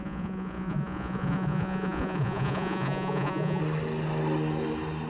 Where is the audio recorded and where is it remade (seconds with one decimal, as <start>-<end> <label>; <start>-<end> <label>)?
0.0-3.6 remade; 3.6-5.1 recorded